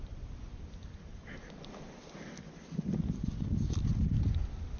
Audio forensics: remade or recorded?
recorded